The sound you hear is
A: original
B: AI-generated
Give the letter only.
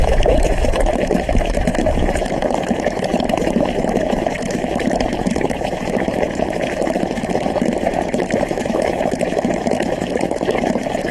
B